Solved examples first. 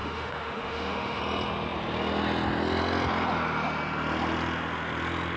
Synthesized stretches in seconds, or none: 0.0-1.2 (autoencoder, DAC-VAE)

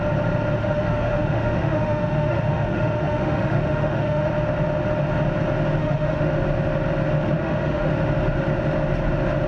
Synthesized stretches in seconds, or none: 0.6-4.3 (autoencoder, DAC-VAE); 5.8-6.3; 7.4-7.9

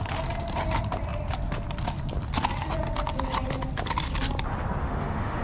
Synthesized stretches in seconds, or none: 4.8-5.4 (autoencoder, DAC-VAE)

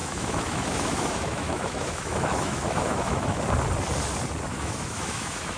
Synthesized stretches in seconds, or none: 0.0-3.4 (autoencoder, DAC-VAE); 4.5-5.6

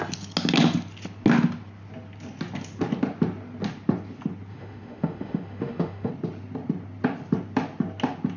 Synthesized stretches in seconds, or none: 4.5-6.1 (autoencoder, DAC-VAE)

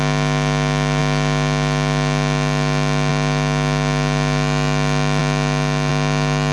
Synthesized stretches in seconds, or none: none